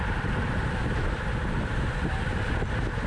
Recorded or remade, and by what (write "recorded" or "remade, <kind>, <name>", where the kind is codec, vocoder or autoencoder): recorded